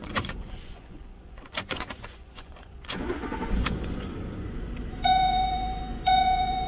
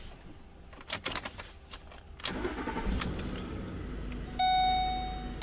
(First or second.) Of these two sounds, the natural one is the second